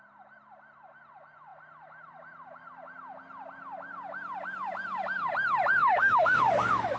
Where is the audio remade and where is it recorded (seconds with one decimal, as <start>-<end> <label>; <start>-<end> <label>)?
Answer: 0.0-5.8 recorded; 5.8-6.4 remade; 6.4-7.0 recorded